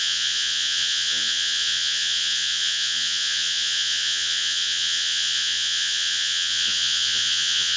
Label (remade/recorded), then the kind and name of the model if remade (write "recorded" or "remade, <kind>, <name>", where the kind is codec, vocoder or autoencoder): remade, vocoder, Vocos